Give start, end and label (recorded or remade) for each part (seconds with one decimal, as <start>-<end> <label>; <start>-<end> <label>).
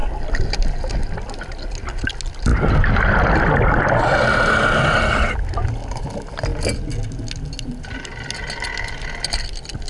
0.0-2.5 recorded; 2.5-3.5 remade; 3.5-9.9 recorded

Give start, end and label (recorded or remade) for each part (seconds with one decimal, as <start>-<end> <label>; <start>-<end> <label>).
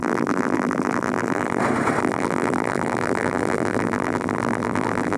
0.0-1.6 remade; 1.6-2.0 recorded; 2.0-5.2 remade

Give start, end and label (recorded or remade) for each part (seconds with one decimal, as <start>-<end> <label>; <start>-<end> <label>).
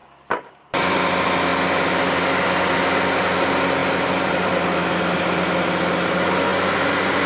0.0-3.8 recorded; 3.8-4.5 remade; 4.5-7.3 recorded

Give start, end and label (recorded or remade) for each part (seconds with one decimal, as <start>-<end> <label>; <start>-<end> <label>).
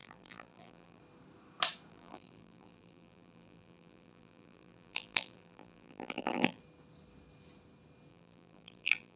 0.0-1.0 remade; 1.0-1.9 recorded; 1.9-6.6 remade; 6.6-8.1 recorded; 8.1-9.2 remade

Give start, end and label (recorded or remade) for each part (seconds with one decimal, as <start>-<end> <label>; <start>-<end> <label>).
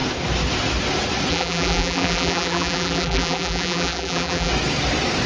0.0-1.3 recorded; 1.3-4.5 remade; 4.5-5.3 recorded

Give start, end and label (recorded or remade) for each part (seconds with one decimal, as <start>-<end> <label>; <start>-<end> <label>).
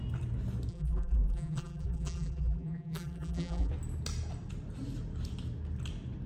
0.0-0.7 recorded; 0.7-3.7 remade; 3.7-6.3 recorded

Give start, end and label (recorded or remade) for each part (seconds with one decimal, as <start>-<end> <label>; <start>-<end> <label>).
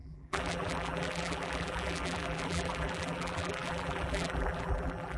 0.0-5.2 remade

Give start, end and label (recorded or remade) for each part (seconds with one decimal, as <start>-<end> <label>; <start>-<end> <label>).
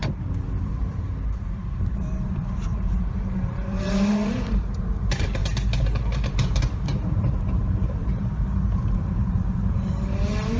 0.0-5.4 remade; 5.4-6.3 recorded; 6.3-10.6 remade